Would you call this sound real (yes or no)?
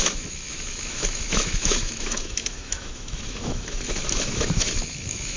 no